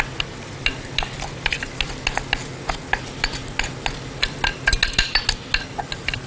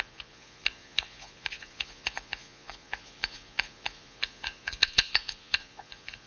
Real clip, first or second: first